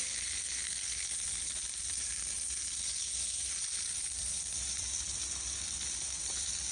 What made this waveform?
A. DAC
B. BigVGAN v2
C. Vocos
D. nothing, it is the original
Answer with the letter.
D